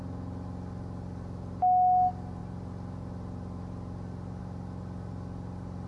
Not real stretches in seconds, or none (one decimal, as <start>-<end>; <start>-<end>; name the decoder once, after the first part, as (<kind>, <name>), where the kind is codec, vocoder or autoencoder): none